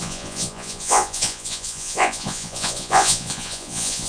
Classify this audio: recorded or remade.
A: remade